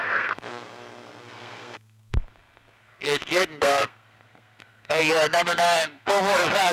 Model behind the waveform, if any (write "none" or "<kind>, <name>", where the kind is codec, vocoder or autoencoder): codec, SNAC